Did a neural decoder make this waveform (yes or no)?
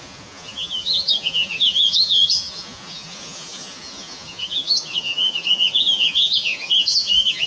yes